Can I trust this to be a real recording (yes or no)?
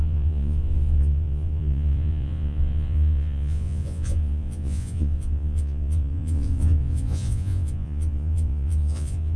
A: no